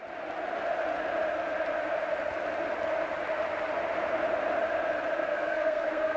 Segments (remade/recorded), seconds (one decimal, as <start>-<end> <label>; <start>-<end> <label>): 0.0-5.3 recorded; 5.3-6.2 remade

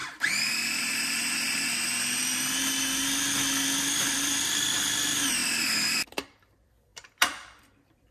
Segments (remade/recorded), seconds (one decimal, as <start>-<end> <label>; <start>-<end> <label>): 0.0-4.0 recorded; 4.0-8.1 remade

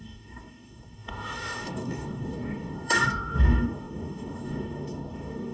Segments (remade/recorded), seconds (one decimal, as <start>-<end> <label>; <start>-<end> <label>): 0.0-5.5 remade